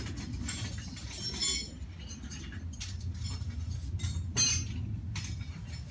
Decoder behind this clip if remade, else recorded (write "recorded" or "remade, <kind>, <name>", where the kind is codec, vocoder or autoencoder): recorded